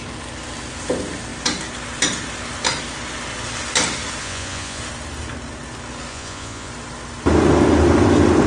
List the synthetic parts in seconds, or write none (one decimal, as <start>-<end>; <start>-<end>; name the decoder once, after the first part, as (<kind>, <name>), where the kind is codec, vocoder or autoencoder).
4.2-4.8 (vocoder, Vocos); 6.1-6.7